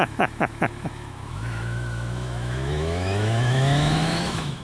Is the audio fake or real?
fake